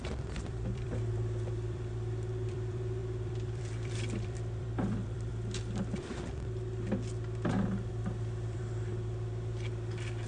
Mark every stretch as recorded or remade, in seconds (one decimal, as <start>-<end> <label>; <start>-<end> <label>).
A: 0.0-5.3 remade; 5.3-7.9 recorded; 7.9-10.3 remade

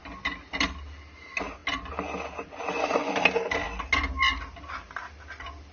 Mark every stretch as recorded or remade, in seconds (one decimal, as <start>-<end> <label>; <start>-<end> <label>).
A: 0.0-5.7 recorded

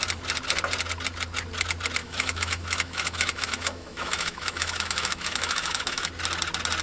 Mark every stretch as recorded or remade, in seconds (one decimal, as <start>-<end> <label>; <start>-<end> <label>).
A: 0.0-2.0 recorded; 2.0-6.1 remade; 6.1-6.8 recorded

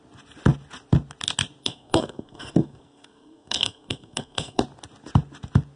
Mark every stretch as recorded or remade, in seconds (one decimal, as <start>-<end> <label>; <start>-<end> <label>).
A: 0.0-1.6 recorded; 1.6-4.6 remade; 4.6-5.8 recorded

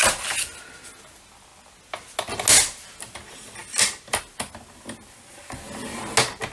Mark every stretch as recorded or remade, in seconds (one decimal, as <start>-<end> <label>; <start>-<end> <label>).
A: 0.0-6.5 recorded

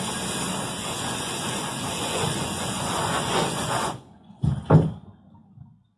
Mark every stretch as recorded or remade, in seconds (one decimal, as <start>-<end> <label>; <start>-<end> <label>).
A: 0.0-0.8 recorded; 0.8-4.4 remade; 4.4-6.0 recorded

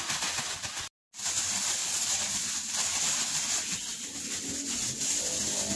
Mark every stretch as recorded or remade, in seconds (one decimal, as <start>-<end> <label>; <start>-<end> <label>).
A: 0.0-1.8 recorded; 1.8-2.5 remade; 2.5-5.8 recorded

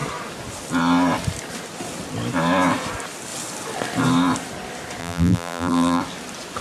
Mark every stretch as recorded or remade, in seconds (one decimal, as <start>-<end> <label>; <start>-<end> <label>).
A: 0.0-5.0 recorded; 5.0-6.0 remade; 6.0-6.6 recorded